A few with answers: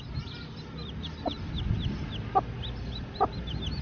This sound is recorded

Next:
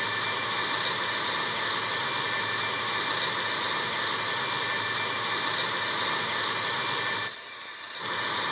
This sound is recorded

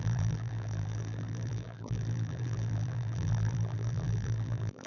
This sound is remade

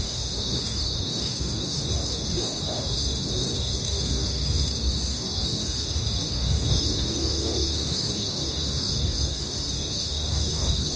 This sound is remade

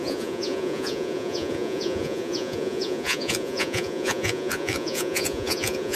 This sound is remade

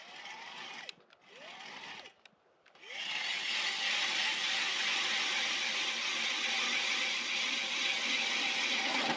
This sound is recorded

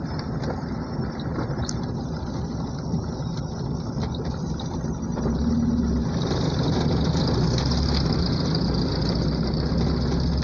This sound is recorded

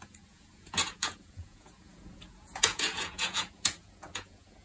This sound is remade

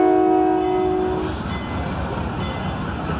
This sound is recorded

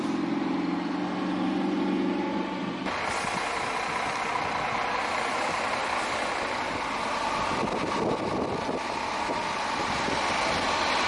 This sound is recorded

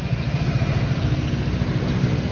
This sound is recorded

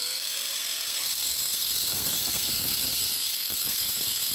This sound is remade